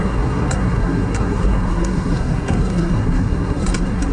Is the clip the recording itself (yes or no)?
no